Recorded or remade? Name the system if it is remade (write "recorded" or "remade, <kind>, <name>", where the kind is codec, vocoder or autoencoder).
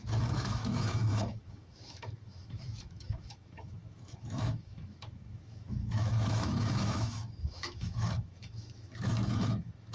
remade, autoencoder, DAC-VAE